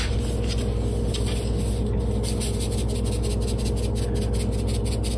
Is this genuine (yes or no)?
yes